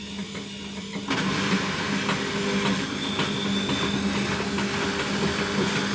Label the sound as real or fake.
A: real